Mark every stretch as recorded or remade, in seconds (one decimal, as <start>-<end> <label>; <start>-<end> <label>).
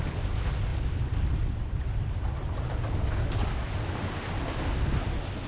0.0-5.5 recorded